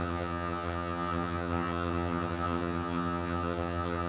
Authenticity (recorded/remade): remade